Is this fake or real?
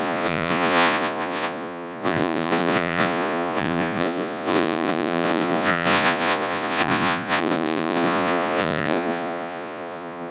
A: fake